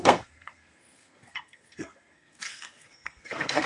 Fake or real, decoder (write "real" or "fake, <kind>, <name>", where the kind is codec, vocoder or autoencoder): fake, codec, SNAC